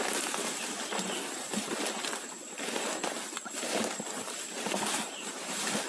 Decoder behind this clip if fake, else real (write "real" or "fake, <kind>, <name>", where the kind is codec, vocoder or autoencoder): real